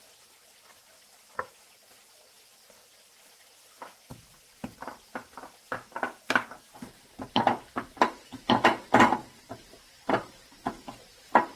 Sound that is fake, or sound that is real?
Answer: real